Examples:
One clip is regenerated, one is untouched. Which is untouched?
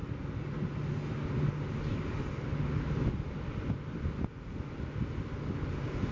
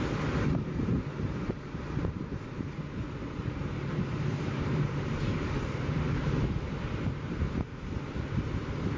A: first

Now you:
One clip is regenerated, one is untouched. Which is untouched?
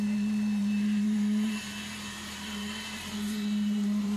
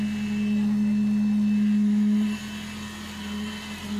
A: second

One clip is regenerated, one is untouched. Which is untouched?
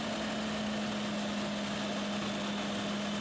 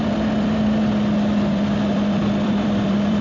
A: first